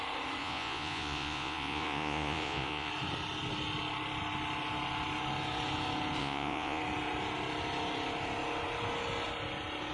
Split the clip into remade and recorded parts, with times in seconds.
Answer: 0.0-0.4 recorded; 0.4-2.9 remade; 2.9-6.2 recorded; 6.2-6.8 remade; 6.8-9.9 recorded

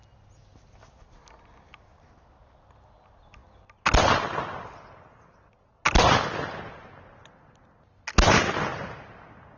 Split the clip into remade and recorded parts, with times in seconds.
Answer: 0.0-9.6 recorded

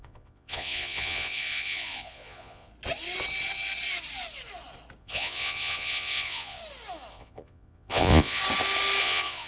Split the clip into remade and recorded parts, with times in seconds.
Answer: 0.0-2.7 remade; 2.7-5.0 recorded; 5.0-6.6 remade; 6.6-7.1 recorded; 7.1-8.4 remade; 8.4-9.0 recorded; 9.0-9.5 remade

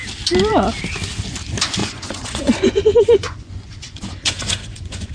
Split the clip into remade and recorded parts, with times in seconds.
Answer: 0.0-1.8 recorded; 1.8-5.1 remade